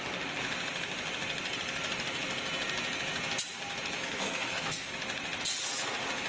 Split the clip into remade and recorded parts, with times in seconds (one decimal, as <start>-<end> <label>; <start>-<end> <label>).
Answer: 0.0-4.0 recorded; 4.0-4.9 remade; 4.9-6.3 recorded